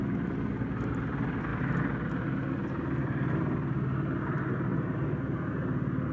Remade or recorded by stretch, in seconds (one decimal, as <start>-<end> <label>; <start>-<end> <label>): 0.0-6.1 recorded